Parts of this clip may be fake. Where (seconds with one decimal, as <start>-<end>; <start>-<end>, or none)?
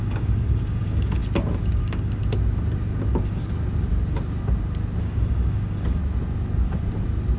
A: 0.0-1.2; 1.8-2.2; 5.0-6.0